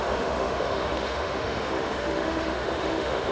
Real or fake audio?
fake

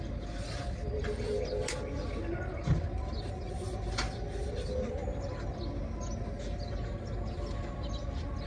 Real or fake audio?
real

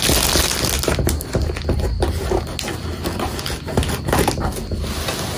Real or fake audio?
real